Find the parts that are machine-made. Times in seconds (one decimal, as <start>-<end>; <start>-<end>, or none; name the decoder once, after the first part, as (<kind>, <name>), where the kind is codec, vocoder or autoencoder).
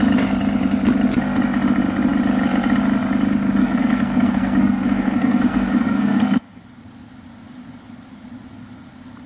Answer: 3.6-6.6 (codec, SNAC)